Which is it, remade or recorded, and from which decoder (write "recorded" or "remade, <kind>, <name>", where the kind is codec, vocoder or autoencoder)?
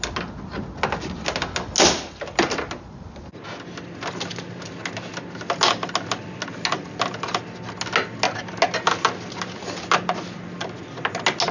recorded